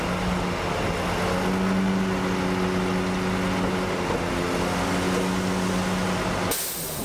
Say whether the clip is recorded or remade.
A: recorded